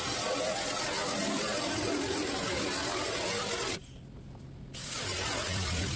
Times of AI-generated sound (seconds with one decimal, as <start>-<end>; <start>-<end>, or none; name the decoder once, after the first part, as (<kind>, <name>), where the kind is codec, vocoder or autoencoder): none